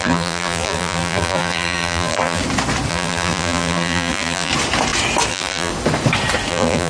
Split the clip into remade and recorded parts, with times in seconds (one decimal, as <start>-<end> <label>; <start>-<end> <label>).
0.0-2.4 remade; 2.4-2.9 recorded; 2.9-4.5 remade; 4.5-5.3 recorded; 5.3-5.7 remade; 5.7-6.5 recorded; 6.5-6.9 remade